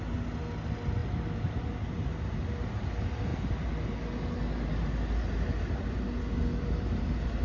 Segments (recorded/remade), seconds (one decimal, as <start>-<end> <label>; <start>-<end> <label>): 0.0-7.4 recorded